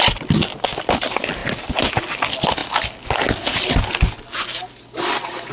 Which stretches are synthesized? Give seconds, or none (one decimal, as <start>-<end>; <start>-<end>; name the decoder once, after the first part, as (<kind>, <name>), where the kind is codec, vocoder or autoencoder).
none